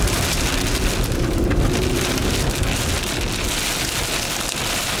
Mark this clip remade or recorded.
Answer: recorded